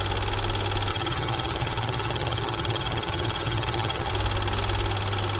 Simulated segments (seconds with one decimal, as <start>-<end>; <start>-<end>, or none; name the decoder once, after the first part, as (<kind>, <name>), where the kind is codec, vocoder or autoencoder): 0.9-4.1 (vocoder, HiFi-GAN)